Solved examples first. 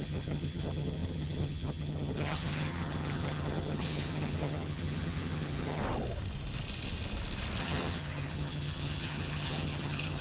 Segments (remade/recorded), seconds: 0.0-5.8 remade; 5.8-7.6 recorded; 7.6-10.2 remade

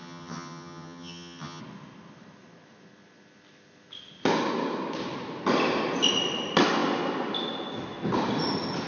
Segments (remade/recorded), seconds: 0.0-1.6 remade; 1.6-8.9 recorded

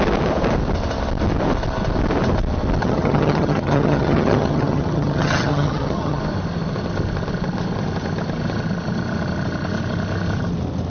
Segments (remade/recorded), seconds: 0.0-2.8 recorded; 2.8-6.2 remade; 6.2-10.9 recorded